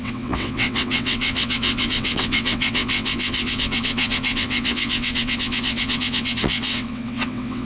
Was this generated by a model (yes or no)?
yes